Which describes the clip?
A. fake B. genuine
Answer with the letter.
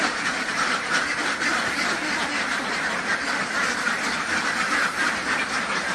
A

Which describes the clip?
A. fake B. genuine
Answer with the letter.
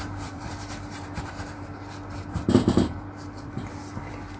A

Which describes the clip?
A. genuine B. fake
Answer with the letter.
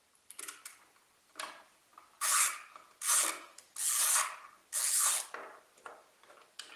A